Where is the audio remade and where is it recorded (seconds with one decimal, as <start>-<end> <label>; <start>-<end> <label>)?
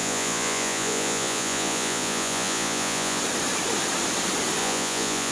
0.0-3.2 remade; 3.2-4.6 recorded; 4.6-5.3 remade